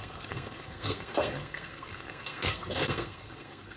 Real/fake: fake